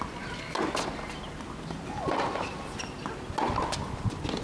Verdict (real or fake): real